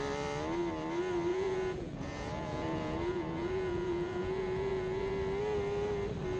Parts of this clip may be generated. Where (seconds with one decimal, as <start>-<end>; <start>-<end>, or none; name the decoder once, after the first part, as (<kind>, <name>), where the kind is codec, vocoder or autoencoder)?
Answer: 1.3-5.1 (vocoder, Vocos)